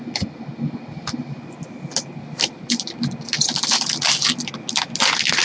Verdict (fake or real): real